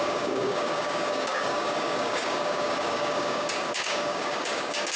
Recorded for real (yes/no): no